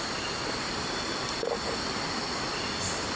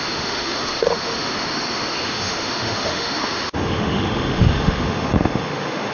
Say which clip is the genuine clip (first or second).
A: first